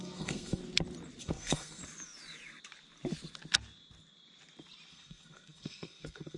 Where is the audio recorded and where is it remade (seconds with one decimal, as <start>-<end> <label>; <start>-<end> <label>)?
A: 0.0-0.6 remade; 0.6-1.2 recorded; 1.2-1.8 remade; 1.8-4.9 recorded; 4.9-6.4 remade